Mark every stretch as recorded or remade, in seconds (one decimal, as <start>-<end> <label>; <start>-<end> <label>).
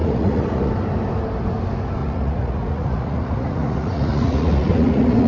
0.0-0.7 remade; 0.7-2.0 recorded; 2.0-5.3 remade